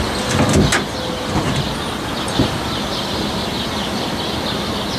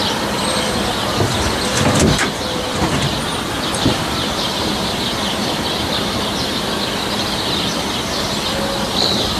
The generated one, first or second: second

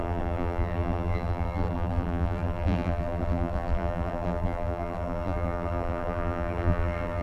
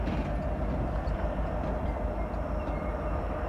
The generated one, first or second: first